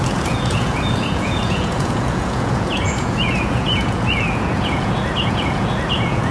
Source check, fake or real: fake